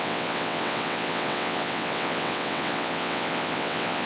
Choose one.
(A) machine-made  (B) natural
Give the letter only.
A